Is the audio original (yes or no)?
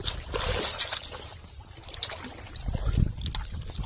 yes